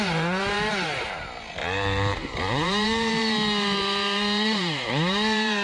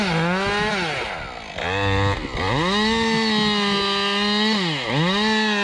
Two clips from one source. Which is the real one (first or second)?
second